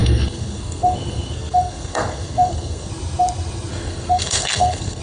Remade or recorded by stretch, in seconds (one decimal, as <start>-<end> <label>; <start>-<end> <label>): 0.0-2.9 remade; 2.9-3.7 recorded; 3.7-5.0 remade

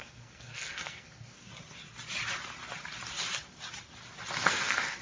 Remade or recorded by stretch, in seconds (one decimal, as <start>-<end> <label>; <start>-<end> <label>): 0.0-1.5 remade; 1.5-4.5 recorded; 4.5-5.0 remade

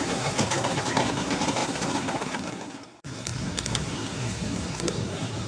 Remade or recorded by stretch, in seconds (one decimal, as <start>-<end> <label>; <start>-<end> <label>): 0.0-5.5 remade

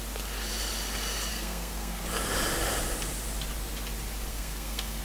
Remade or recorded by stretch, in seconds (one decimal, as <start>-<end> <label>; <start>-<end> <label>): 0.0-1.3 recorded; 1.3-2.0 remade; 2.0-4.3 recorded; 4.3-5.0 remade

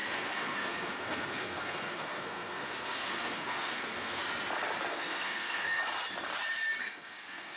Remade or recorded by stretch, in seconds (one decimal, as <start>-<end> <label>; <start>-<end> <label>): 0.0-4.2 remade; 4.2-4.9 recorded; 4.9-5.8 remade; 5.8-6.8 recorded; 6.8-7.6 remade

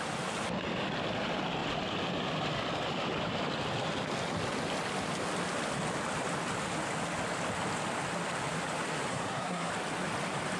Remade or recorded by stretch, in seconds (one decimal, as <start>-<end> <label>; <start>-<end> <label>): 0.0-9.1 recorded; 9.1-9.7 remade; 9.7-10.6 recorded